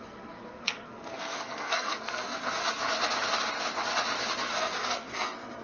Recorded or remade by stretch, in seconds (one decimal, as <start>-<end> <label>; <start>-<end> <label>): 0.0-2.8 remade; 2.8-4.3 recorded; 4.3-5.6 remade